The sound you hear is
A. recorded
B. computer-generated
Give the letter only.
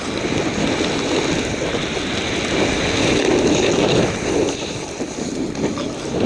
A